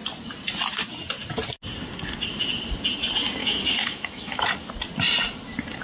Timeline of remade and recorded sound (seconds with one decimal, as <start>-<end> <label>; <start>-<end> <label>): 0.0-3.4 recorded; 3.4-4.5 remade; 4.5-5.8 recorded